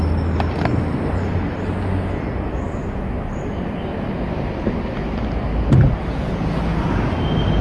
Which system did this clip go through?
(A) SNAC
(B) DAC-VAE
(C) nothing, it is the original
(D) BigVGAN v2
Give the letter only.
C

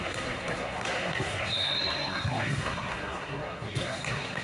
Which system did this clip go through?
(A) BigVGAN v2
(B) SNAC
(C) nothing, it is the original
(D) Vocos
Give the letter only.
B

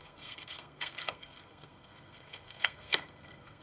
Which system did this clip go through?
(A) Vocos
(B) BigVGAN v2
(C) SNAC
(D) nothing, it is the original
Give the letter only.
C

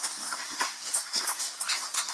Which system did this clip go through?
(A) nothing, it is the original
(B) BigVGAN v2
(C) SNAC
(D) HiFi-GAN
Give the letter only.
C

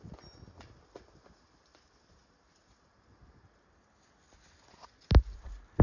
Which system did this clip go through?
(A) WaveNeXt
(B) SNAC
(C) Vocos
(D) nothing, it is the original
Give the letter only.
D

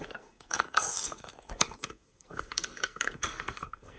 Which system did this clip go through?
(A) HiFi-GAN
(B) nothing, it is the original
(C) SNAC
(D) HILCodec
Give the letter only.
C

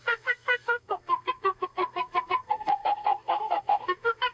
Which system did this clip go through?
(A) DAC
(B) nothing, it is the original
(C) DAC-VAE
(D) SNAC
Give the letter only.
D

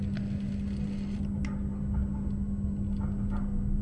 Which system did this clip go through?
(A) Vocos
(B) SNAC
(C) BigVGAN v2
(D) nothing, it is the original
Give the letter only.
D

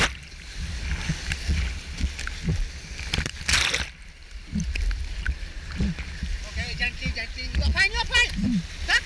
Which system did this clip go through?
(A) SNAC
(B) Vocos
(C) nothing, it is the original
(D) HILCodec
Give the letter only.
C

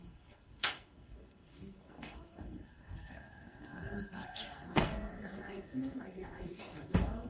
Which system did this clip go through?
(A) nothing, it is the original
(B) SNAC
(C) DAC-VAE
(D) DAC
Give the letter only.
B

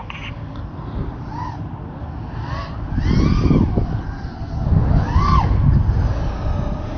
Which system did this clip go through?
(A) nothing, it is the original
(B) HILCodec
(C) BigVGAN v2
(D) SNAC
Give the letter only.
A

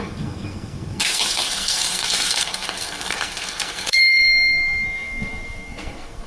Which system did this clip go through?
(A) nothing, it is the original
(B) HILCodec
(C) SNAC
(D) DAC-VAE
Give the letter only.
C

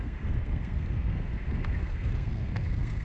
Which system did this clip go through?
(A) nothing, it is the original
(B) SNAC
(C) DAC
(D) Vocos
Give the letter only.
B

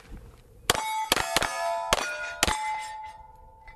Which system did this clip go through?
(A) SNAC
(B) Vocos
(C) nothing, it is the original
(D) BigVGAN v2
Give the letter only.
C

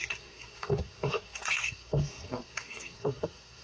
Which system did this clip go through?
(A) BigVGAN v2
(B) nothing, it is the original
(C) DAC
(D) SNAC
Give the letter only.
D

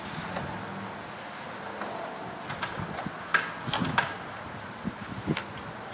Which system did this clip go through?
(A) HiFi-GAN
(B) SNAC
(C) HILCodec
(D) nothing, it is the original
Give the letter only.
D